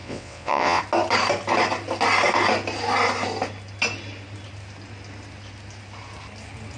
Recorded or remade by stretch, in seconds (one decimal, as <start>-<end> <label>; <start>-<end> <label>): 0.0-0.8 remade; 0.8-6.8 recorded